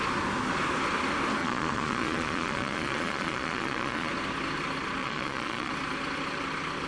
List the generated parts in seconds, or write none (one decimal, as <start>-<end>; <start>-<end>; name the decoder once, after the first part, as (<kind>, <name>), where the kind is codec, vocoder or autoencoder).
1.4-4.1 (vocoder, Vocos); 5.0-5.7